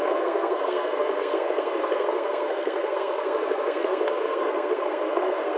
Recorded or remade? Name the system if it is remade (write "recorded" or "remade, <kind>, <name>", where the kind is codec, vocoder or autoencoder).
remade, codec, SNAC